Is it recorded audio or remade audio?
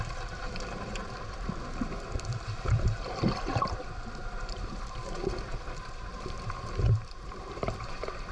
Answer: remade